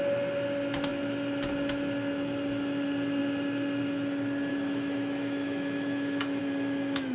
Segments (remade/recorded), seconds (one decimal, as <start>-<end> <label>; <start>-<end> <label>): 0.0-4.5 recorded; 4.5-6.4 remade; 6.4-7.1 recorded